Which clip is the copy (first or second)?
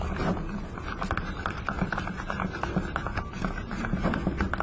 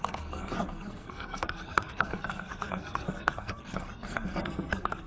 second